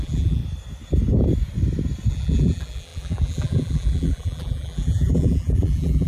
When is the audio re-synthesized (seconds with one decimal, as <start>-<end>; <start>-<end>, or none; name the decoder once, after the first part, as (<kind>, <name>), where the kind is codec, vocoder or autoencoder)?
0.0-0.4 (vocoder, BigVGAN v2); 2.1-6.1